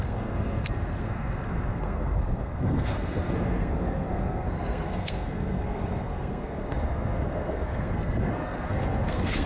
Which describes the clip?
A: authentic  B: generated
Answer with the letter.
B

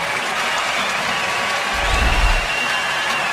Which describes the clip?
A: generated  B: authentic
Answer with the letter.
A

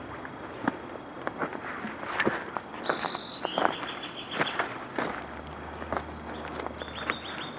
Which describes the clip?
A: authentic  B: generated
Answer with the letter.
A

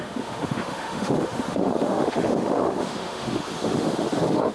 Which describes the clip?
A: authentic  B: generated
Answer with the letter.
B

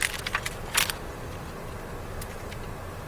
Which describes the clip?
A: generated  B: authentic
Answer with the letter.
B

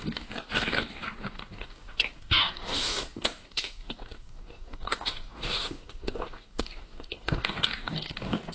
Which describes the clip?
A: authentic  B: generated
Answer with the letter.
B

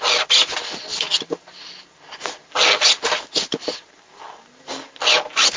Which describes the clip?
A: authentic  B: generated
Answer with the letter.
A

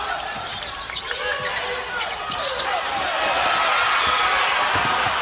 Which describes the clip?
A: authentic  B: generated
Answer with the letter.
A